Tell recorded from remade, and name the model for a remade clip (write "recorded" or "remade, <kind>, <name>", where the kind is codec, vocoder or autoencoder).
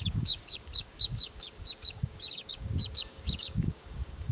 remade, codec, DAC